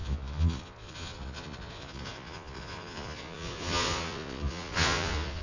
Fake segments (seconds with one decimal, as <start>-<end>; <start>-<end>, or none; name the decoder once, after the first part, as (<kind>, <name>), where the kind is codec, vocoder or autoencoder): 0.0-5.4 (vocoder, Vocos)